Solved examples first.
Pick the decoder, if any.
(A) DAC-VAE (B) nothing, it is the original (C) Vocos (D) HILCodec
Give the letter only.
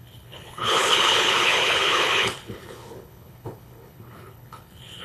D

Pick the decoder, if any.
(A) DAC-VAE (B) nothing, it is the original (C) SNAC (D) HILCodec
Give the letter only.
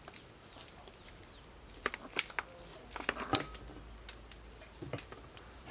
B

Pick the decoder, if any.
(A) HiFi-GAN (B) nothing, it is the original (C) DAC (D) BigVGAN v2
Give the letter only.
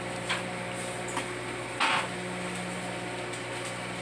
B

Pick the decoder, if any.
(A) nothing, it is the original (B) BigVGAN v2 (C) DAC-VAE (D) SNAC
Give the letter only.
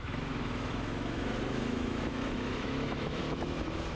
C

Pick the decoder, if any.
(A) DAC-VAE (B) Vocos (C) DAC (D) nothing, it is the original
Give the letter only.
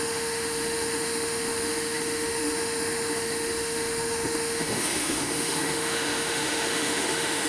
A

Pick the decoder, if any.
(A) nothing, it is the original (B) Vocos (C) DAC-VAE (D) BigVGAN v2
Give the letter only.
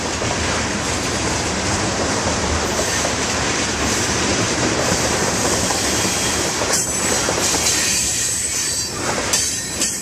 D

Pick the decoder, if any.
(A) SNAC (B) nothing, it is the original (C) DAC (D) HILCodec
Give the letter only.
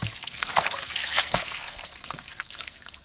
A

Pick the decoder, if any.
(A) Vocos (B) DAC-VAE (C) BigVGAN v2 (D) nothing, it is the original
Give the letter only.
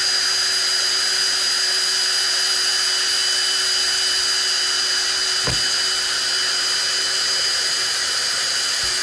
D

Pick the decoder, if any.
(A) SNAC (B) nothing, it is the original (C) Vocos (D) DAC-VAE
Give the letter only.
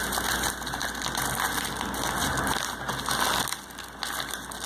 B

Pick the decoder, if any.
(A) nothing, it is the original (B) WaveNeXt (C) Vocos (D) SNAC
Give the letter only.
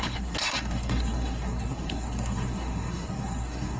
D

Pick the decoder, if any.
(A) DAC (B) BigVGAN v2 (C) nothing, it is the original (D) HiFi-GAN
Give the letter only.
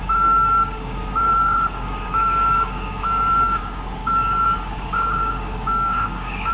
A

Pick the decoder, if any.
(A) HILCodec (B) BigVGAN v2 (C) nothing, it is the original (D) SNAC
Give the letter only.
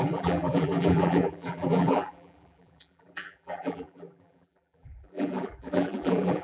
B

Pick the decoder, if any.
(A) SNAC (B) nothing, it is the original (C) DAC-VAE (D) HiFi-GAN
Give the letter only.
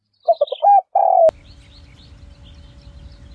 B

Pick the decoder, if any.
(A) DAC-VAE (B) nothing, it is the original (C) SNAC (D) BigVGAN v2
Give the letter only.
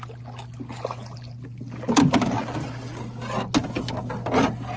B